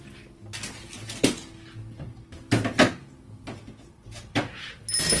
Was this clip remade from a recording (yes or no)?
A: no